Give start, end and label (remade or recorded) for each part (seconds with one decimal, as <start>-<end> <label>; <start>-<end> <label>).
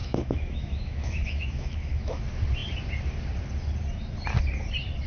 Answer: 0.0-2.2 remade; 2.2-5.1 recorded